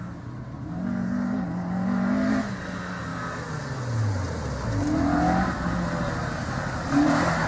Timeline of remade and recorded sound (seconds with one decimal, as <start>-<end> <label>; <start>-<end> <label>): 0.0-7.5 recorded